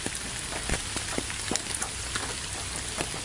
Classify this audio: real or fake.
real